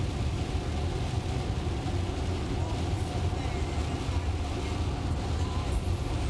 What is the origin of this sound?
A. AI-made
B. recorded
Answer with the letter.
B